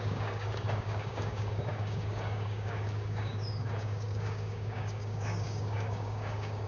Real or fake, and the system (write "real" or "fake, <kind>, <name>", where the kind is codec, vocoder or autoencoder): fake, codec, DAC